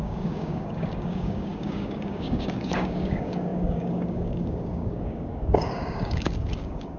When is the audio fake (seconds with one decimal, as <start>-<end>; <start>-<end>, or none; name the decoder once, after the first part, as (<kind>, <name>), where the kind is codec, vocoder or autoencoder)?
0.0-7.0 (codec, DAC)